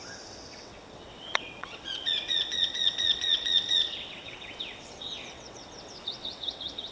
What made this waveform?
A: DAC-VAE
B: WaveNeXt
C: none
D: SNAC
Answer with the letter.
B